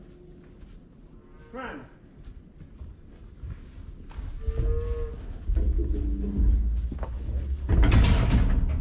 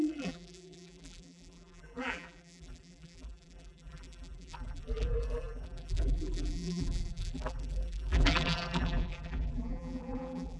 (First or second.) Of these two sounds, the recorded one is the first